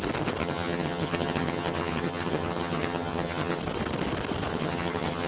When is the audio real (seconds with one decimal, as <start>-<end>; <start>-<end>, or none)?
0.0-0.4; 3.6-4.5